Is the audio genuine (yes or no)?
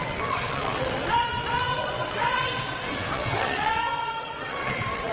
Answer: no